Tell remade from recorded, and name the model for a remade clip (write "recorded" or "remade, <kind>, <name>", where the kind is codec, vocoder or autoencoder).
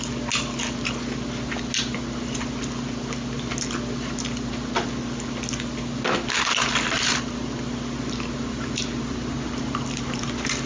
recorded